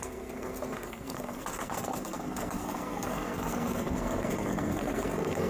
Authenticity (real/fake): fake